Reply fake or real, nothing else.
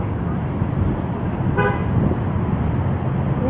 real